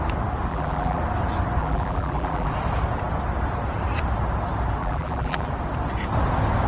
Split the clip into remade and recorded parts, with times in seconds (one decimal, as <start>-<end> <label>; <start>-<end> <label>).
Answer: 0.0-0.5 recorded; 0.5-1.0 remade; 1.0-1.6 recorded; 1.6-2.5 remade; 2.5-4.8 recorded; 4.8-5.5 remade; 5.5-6.7 recorded